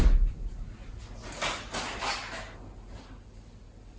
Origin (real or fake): real